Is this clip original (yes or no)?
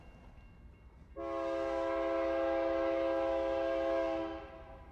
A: yes